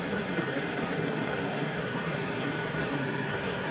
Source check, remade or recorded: remade